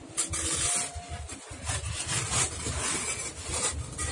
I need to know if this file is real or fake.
real